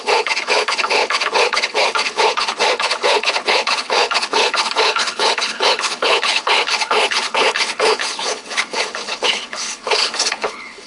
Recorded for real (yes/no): no